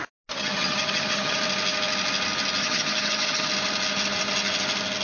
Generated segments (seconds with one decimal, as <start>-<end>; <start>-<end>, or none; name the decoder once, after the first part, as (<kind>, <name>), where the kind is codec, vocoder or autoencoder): 0.4-1.4 (vocoder, HiFi-GAN); 2.6-3.5